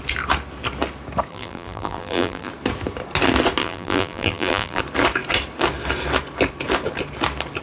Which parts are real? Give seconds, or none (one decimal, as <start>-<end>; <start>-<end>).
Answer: 0.0-1.3; 2.5-3.6; 4.8-7.6